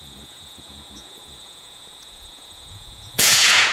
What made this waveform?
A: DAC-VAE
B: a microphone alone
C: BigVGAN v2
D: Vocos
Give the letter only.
D